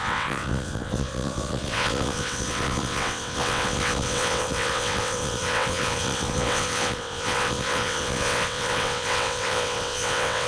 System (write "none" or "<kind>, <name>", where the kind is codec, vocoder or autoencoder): vocoder, WaveNeXt